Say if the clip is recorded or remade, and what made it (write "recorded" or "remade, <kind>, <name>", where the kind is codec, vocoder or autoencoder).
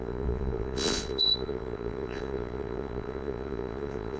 remade, vocoder, Vocos